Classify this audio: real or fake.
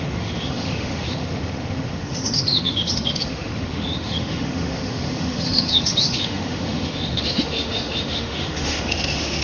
fake